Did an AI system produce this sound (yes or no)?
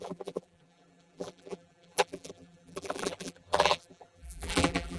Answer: yes